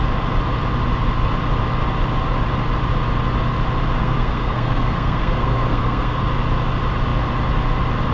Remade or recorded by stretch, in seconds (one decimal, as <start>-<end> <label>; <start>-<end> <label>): 0.0-4.0 recorded; 4.0-6.2 remade; 6.2-8.1 recorded